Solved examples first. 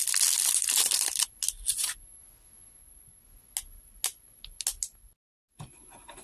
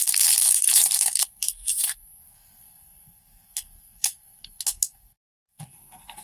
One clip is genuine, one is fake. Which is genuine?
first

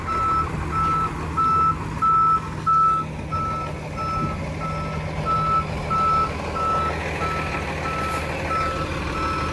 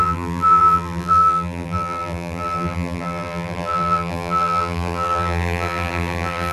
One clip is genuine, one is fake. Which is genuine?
first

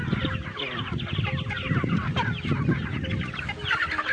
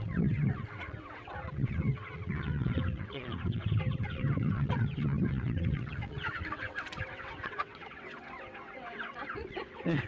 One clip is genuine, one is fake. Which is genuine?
first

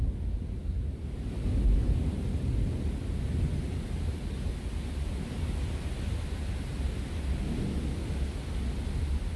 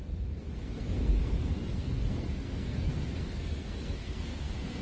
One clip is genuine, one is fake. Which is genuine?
first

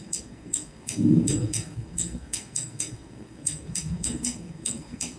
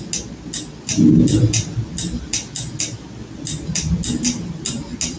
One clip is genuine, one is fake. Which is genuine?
second